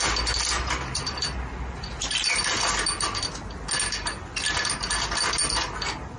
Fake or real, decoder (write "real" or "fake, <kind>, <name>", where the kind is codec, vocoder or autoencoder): real